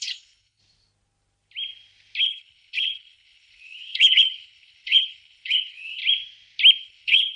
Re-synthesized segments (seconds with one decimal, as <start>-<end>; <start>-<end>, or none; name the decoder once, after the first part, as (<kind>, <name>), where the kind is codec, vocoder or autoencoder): 0.0-0.6 (codec, HILCodec); 2.2-6.0; 6.8-7.4

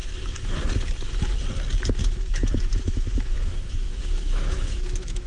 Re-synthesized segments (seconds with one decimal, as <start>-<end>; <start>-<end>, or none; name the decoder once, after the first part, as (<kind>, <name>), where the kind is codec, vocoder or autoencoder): 0.0-0.6 (autoencoder, DAC-VAE); 2.0-5.3

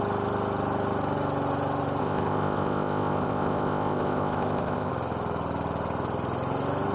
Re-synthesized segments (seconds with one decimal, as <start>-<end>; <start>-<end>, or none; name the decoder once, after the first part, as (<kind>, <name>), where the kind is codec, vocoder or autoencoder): 2.0-4.9 (codec, ZipCodec)

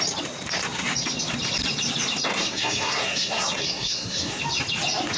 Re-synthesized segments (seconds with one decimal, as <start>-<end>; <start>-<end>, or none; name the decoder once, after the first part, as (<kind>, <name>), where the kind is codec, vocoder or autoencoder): 2.3-4.4 (codec, SNAC)

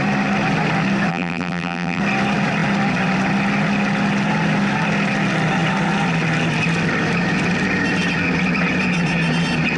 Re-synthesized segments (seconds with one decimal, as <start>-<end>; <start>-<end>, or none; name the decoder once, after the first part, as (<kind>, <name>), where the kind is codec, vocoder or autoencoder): 1.1-2.0 (vocoder, BigVGAN v2)

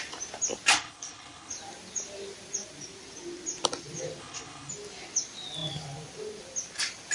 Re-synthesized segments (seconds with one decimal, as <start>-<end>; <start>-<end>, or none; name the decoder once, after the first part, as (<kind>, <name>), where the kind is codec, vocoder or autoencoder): 0.7-1.5 (codec, HILCodec); 4.2-4.7